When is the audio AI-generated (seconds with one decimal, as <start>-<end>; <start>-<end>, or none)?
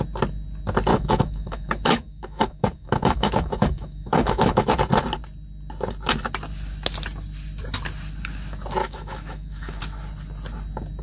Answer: 0.9-4.7; 8.8-9.8